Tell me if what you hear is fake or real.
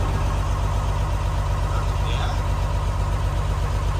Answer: real